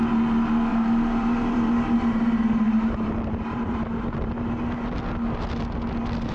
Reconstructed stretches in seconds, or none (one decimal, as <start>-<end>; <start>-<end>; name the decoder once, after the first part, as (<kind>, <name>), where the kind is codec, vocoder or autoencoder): 0.7-4.5 (vocoder, BigVGAN v2)